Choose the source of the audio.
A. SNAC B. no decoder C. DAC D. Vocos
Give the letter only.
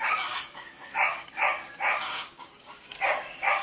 C